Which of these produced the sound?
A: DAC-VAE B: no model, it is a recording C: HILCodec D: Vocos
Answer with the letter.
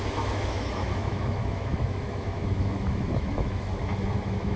A